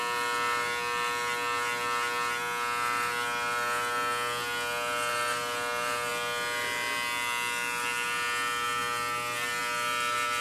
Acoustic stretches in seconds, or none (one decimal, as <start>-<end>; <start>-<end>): 0.0-10.4